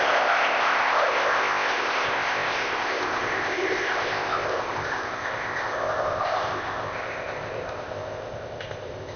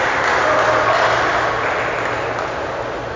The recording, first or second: second